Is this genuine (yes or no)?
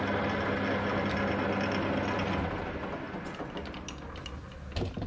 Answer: yes